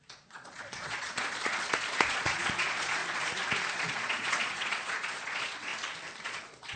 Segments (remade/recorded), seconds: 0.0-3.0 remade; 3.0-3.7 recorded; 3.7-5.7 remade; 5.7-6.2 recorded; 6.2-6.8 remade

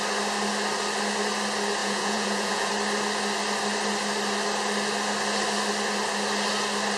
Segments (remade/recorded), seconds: 0.0-1.8 recorded; 1.8-2.7 remade; 2.7-7.0 recorded

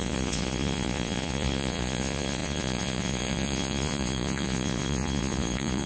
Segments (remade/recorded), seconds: 0.0-5.9 remade

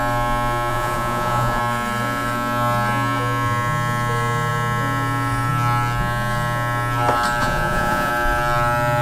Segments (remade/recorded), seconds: 0.0-0.7 recorded; 0.7-1.6 remade; 1.6-7.4 recorded; 7.4-8.1 remade; 8.1-9.0 recorded

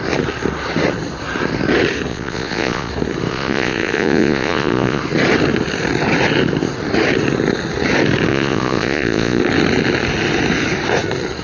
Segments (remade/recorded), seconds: 0.0-2.1 recorded; 2.1-2.9 remade; 2.9-3.3 recorded; 3.3-5.0 remade; 5.0-8.3 recorded; 8.3-9.4 remade; 9.4-11.4 recorded